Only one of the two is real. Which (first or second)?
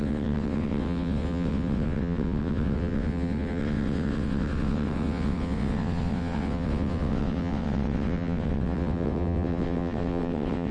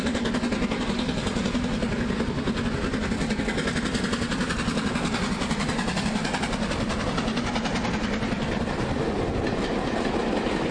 second